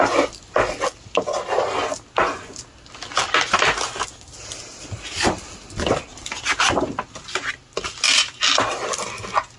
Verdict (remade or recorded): recorded